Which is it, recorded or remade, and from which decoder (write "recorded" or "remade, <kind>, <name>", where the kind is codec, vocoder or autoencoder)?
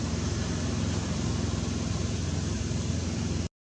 recorded